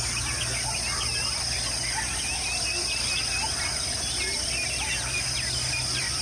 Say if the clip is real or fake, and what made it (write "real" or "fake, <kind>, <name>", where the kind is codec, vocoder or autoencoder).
real